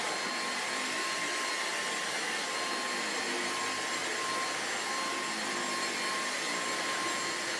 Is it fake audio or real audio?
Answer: real